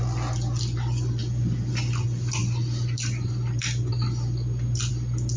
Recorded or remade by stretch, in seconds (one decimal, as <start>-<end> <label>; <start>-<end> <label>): 0.0-5.4 recorded